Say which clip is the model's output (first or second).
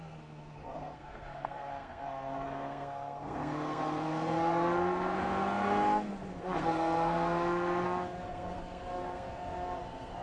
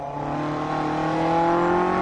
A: first